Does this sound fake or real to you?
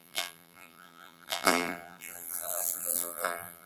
fake